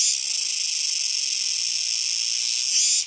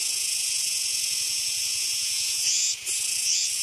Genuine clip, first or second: first